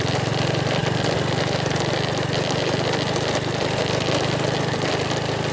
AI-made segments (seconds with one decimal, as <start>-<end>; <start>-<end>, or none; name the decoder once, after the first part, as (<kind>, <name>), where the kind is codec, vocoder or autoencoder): none